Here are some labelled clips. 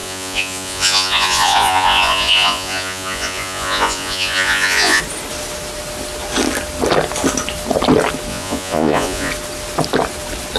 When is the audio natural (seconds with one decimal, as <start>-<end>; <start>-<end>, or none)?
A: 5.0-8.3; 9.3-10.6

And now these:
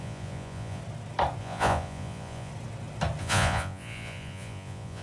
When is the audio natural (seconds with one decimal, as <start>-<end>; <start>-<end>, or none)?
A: 0.8-1.4; 2.5-3.2

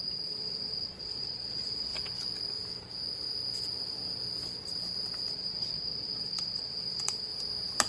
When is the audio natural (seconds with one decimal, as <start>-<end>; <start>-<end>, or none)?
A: 1.9-5.3; 7.3-7.9

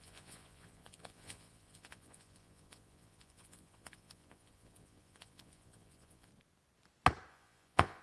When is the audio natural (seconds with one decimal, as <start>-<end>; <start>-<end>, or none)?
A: 6.3-7.3